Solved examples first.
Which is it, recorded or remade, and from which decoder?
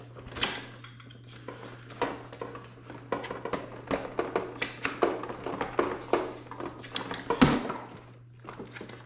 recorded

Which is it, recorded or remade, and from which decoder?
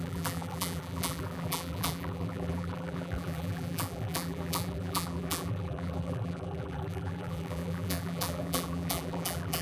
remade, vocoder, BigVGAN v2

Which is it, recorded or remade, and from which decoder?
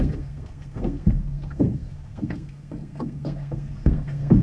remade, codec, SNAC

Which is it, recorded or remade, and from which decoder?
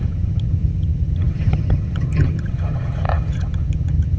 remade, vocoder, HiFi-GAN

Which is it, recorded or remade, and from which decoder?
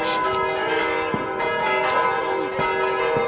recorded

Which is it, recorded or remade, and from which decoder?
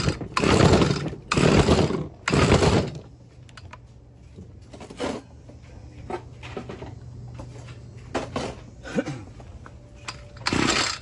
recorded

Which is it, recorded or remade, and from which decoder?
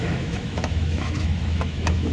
remade, autoencoder, DAC-VAE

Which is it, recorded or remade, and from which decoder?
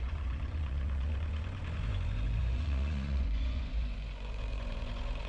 remade, vocoder, Vocos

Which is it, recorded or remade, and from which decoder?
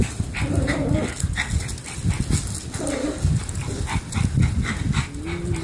recorded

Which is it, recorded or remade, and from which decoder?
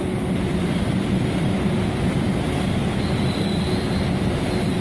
remade, vocoder, BigVGAN v2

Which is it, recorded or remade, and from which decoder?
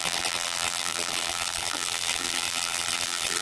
remade, vocoder, BigVGAN v2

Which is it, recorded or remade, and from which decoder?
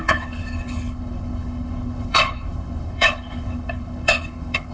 remade, codec, HILCodec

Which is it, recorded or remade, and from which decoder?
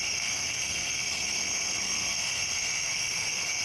remade, codec, SNAC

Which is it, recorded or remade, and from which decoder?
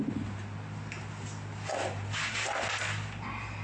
recorded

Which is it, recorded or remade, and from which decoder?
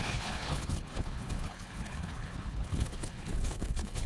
remade, codec, HILCodec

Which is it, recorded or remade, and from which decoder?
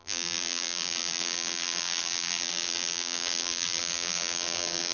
remade, vocoder, BigVGAN v2